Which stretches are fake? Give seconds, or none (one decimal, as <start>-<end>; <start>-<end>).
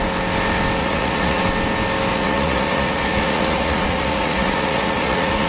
0.8-1.4; 2.1-5.5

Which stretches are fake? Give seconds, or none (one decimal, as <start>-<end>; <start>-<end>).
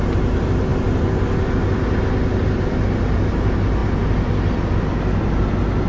none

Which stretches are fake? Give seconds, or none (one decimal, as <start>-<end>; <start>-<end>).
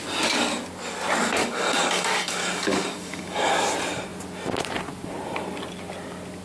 1.4-3.5